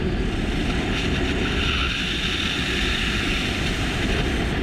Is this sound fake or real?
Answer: real